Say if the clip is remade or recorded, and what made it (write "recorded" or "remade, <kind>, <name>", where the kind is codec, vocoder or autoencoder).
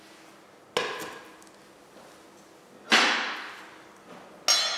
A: recorded